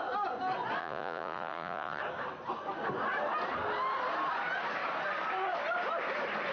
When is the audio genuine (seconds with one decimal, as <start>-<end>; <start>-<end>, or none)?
0.0-0.8; 2.0-6.5